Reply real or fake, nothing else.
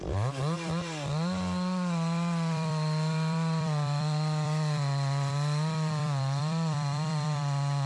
fake